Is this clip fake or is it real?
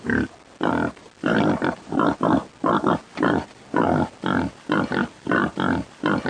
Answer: real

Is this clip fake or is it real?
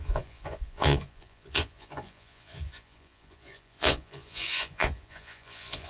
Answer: fake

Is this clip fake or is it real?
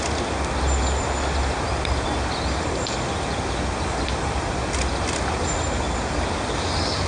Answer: real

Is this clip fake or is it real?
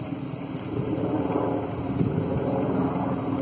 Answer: real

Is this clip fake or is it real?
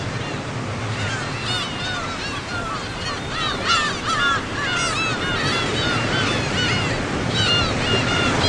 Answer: real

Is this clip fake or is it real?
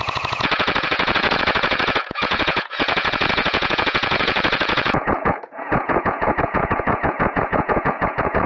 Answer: fake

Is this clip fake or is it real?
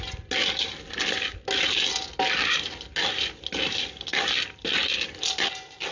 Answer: real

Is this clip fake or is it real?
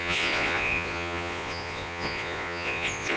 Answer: fake